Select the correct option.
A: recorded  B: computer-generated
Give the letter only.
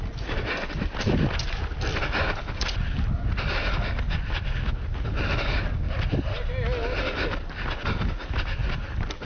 A